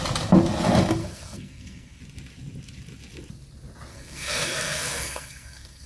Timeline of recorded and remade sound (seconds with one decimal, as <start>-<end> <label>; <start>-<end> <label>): 0.0-1.0 recorded; 1.0-2.0 remade; 2.0-3.9 recorded; 3.9-5.9 remade